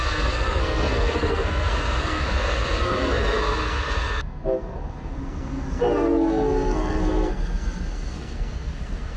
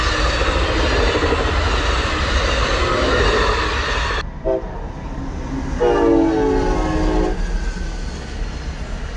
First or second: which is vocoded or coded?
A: first